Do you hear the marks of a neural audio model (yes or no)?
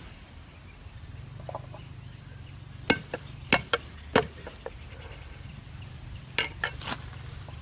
no